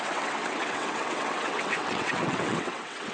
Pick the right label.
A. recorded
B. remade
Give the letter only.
B